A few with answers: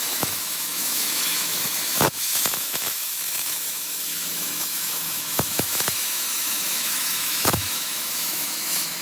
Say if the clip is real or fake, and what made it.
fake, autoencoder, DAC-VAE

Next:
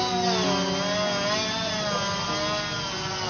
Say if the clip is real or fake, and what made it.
real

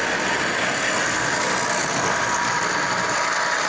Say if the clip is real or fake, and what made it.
real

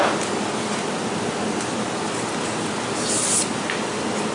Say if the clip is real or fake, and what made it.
real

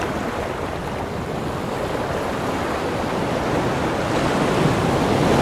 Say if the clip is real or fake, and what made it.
real